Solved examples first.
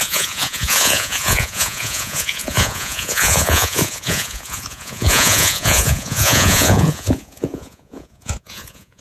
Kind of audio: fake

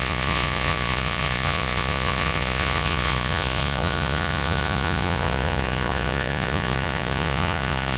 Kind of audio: fake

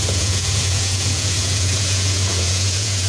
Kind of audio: fake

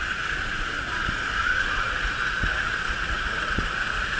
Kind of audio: fake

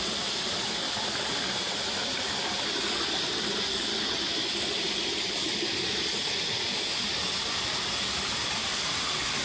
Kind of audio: real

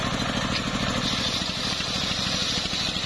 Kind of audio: real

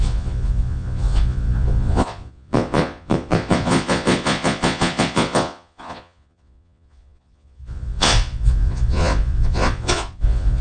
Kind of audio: fake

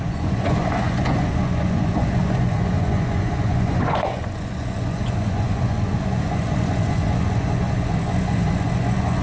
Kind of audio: fake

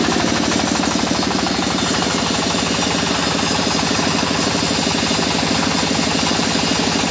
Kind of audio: real